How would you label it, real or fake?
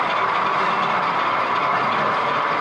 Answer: real